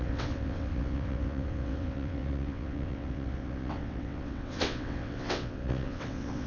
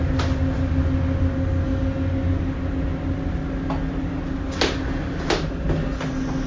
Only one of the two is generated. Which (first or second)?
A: first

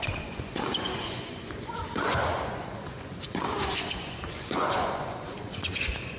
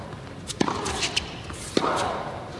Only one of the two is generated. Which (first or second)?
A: first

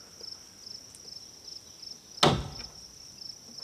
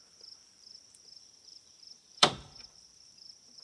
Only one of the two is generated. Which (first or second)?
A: second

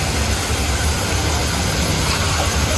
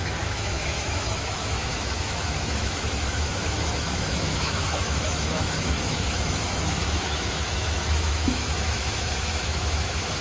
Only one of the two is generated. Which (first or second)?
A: second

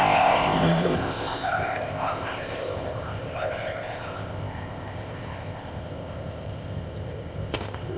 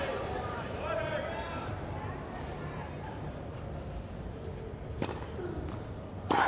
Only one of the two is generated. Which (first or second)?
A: first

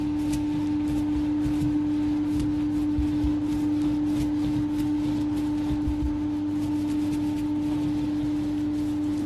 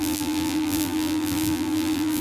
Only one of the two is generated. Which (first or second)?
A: second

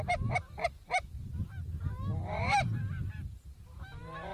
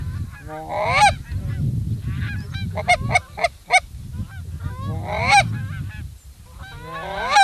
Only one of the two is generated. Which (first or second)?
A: first